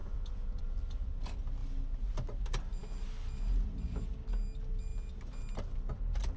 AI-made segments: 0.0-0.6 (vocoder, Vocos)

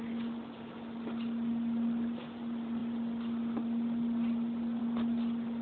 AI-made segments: none

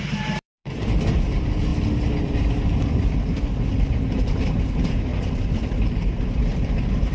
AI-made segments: 0.0-1.7 (vocoder, BigVGAN v2); 2.2-5.1

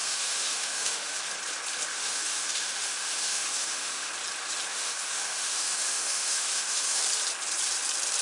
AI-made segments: 0.0-1.2 (autoencoder, DAC-VAE); 1.9-4.1; 4.7-7.0

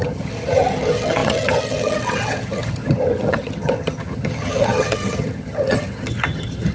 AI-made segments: 0.0-6.7 (vocoder, HiFi-GAN)

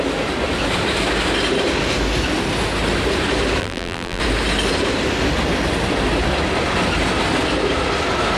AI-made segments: 3.6-4.2 (vocoder, BigVGAN v2)